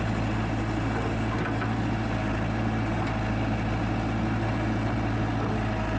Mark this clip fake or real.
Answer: real